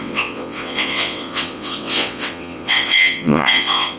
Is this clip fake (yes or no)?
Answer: yes